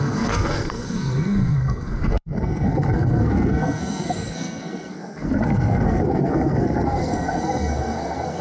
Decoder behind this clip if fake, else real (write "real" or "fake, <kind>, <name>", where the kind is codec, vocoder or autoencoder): fake, codec, SNAC